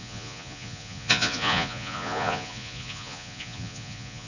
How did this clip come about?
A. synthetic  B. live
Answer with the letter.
A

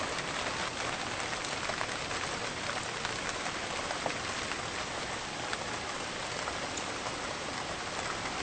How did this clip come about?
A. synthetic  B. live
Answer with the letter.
B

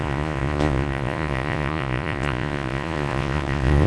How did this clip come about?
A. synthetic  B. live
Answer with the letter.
A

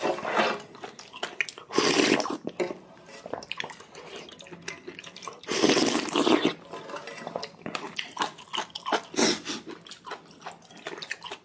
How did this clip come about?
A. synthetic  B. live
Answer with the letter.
B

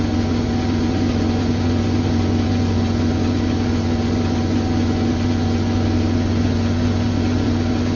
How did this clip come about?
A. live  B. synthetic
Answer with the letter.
B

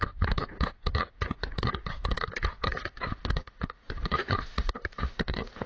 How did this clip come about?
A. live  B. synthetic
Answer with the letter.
B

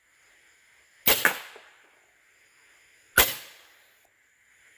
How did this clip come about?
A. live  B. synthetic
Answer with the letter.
A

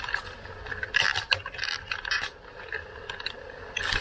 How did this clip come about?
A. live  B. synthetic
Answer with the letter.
A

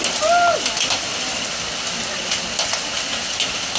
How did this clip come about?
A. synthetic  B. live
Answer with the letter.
B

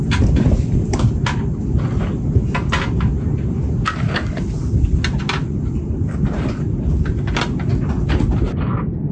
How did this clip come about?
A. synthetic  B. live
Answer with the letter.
B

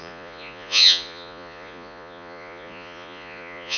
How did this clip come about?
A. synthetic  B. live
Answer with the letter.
A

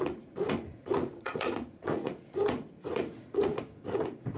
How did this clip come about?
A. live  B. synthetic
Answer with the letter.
B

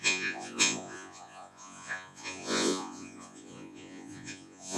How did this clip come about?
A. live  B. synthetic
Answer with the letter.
B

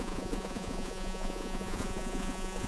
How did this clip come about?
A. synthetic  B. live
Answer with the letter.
A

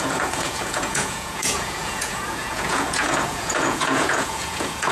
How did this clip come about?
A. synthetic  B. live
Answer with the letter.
A